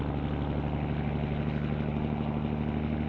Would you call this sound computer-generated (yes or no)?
no